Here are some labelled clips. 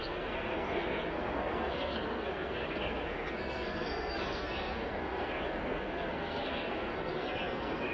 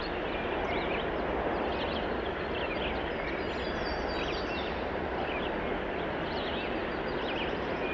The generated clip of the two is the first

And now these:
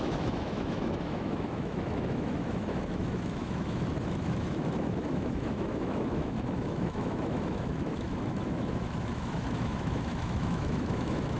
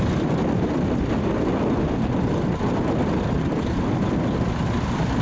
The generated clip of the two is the first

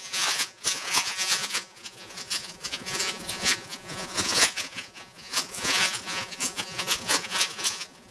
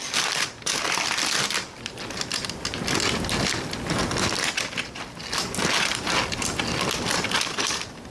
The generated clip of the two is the first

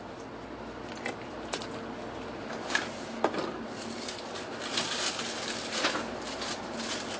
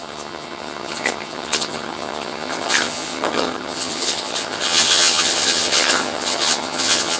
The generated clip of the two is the second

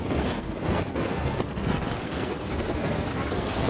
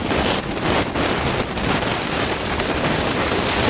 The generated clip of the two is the first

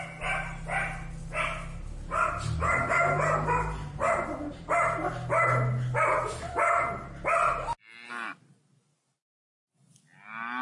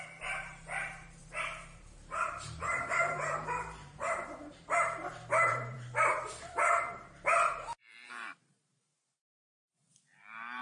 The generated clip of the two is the second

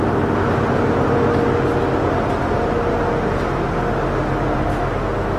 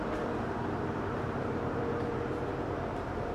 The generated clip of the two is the second